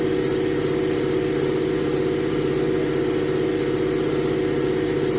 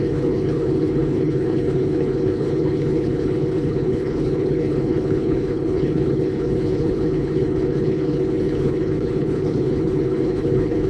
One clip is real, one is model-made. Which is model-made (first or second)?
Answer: second